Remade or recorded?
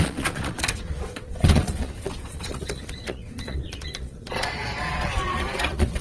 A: remade